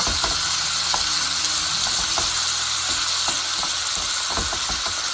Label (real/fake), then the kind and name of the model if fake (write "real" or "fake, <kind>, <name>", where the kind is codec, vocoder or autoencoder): real